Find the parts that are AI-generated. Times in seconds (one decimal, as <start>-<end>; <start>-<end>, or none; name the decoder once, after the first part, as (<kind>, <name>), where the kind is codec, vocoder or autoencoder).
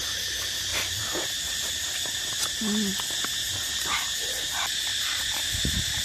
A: 0.7-1.7 (vocoder, BigVGAN v2); 4.9-6.0